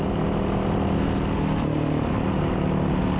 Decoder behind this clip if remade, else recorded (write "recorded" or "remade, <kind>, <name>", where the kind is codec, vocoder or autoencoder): recorded